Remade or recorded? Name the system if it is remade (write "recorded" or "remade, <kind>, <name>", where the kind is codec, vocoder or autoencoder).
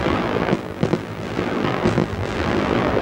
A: remade, vocoder, BigVGAN v2